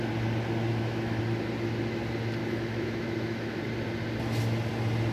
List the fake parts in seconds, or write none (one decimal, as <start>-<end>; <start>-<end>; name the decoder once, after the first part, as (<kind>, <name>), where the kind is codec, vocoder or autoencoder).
0.7-1.2 (autoencoder, DAC-VAE); 2.4-3.6